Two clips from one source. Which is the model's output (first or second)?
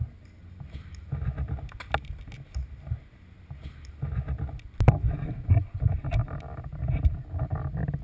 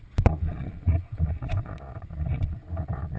second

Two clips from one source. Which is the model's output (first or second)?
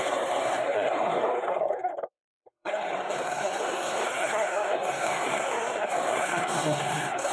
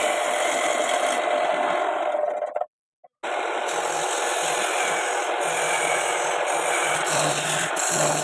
first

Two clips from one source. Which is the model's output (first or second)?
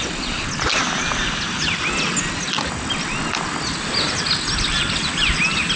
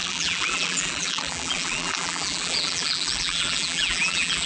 second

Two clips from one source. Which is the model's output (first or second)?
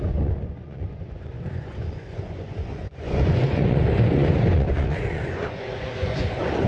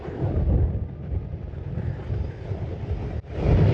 first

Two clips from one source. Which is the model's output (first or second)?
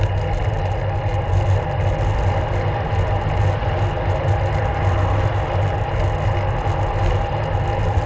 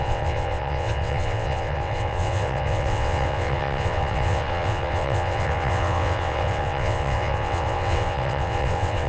second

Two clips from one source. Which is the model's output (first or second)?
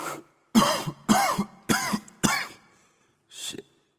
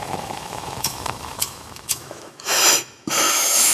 second